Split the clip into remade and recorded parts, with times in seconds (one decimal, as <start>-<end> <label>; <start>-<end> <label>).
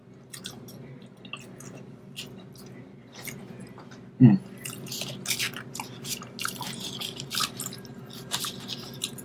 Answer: 0.0-9.2 recorded